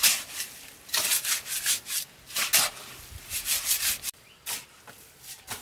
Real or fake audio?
real